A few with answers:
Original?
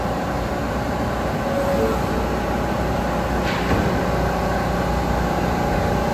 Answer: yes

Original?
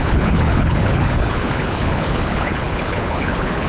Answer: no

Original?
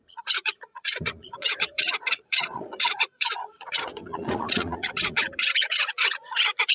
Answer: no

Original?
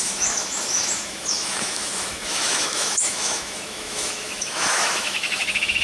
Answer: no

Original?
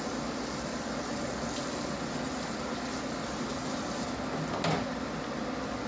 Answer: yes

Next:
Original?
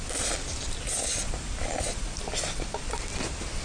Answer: yes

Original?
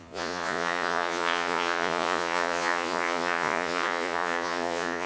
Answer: no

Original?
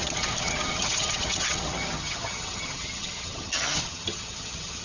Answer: no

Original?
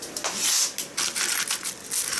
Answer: yes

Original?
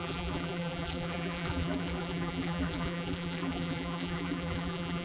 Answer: no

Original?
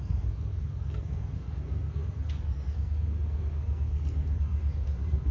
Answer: no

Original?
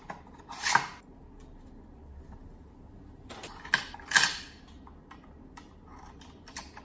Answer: yes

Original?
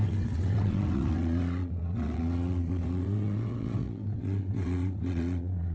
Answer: no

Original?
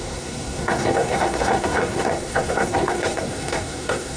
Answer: no